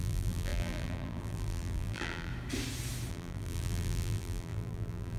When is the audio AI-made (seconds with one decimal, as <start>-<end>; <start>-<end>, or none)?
0.0-2.3; 3.1-5.2